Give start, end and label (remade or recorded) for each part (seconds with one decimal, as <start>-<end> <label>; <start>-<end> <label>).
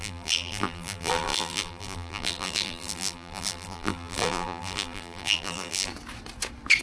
0.0-5.9 remade; 5.9-6.8 recorded